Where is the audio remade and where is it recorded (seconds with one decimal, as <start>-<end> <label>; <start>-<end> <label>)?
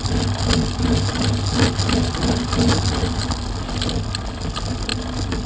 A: 0.0-5.5 recorded